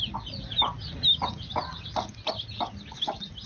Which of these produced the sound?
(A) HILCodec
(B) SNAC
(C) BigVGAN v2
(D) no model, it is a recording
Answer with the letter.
D